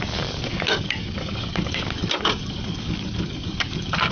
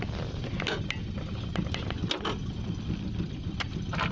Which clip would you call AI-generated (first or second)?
first